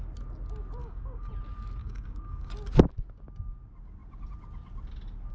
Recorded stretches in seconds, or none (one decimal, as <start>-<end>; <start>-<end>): 0.0-0.8; 1.3-1.8; 2.5-5.3